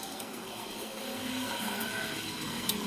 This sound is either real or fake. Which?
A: fake